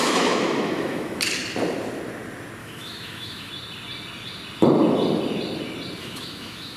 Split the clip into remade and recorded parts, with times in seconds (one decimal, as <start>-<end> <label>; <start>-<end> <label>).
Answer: 0.0-1.2 remade; 1.2-2.6 recorded; 2.6-3.5 remade; 3.5-6.0 recorded; 6.0-6.8 remade

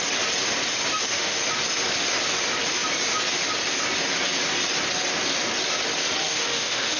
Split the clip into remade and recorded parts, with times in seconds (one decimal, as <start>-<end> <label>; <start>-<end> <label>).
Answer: 0.0-0.9 recorded; 0.9-1.4 remade; 1.4-6.2 recorded; 6.2-7.0 remade

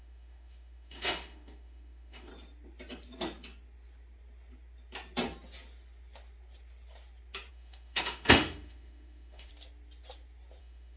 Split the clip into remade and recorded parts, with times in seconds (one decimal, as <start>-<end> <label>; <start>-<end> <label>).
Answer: 0.0-2.3 remade; 2.3-7.5 recorded; 7.5-9.5 remade; 9.5-10.6 recorded; 10.6-11.0 remade